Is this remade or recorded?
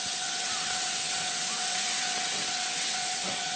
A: remade